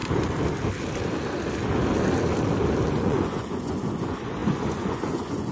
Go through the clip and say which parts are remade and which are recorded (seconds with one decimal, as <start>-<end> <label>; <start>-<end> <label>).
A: 0.0-2.9 recorded; 2.9-5.5 remade